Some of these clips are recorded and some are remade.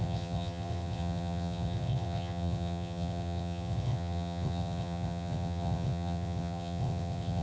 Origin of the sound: remade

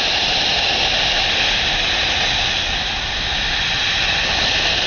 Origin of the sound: recorded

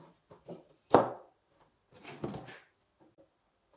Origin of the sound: recorded